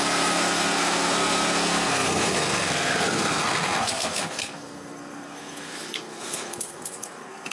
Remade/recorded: remade